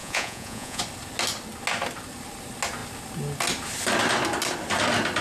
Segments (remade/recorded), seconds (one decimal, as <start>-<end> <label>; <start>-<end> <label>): 0.0-0.8 remade; 0.8-5.2 recorded